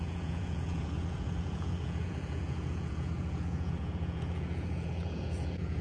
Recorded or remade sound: remade